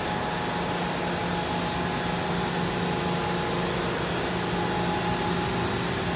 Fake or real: real